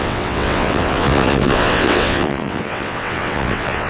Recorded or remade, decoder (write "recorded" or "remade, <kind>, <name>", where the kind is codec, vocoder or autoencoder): remade, vocoder, WaveNeXt